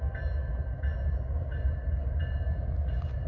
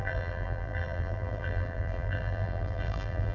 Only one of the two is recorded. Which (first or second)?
first